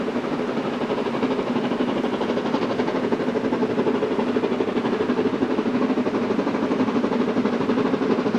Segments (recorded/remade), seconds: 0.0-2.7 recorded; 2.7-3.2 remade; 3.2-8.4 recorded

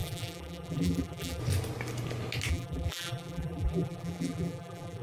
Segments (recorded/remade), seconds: 0.0-1.4 remade; 1.4-2.5 recorded; 2.5-5.0 remade

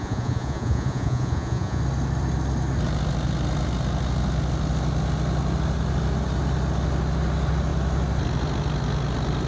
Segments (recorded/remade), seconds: 0.0-1.8 remade; 1.8-9.5 recorded